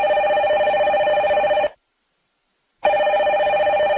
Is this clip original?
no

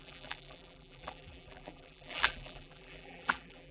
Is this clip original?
no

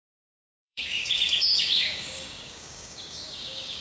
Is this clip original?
no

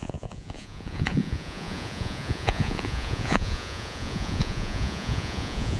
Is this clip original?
no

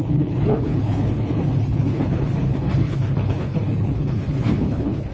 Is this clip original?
no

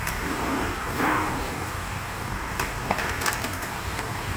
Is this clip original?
no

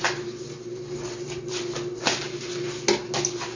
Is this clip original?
yes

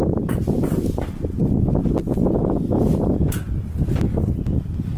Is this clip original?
yes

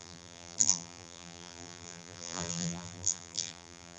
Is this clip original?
no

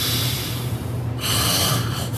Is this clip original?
no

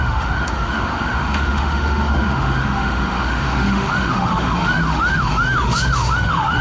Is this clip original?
no